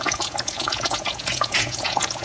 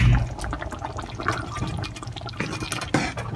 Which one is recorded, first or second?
second